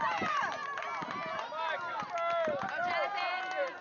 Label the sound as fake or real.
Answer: real